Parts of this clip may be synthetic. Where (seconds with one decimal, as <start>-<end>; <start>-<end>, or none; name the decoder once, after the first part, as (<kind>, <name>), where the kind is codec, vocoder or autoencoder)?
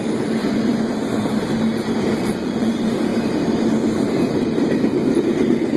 0.4-0.9 (vocoder, Vocos); 2.1-2.7